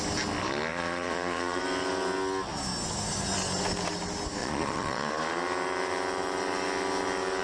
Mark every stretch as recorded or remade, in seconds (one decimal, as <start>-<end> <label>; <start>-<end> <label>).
0.0-0.7 recorded; 0.7-1.6 remade; 1.6-4.4 recorded; 4.4-5.1 remade; 5.1-7.4 recorded